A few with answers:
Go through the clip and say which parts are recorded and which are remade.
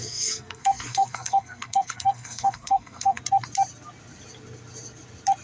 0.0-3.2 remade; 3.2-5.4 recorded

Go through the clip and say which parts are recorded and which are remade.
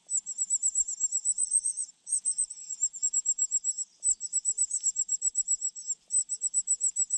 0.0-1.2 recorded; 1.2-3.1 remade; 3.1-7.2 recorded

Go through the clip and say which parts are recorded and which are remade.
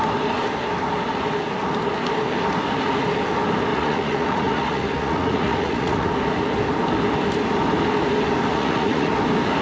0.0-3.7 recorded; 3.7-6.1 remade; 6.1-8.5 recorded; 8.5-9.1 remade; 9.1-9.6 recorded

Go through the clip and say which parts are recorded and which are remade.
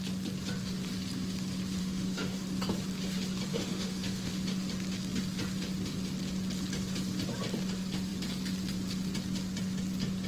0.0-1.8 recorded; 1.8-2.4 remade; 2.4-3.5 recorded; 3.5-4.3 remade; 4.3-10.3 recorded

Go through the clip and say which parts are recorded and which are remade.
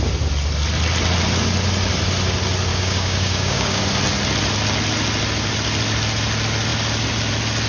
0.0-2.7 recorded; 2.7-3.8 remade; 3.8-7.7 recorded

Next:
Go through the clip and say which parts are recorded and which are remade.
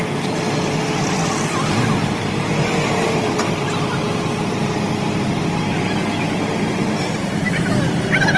0.0-8.4 recorded